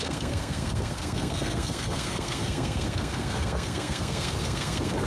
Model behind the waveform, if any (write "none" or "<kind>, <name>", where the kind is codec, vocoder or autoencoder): codec, SNAC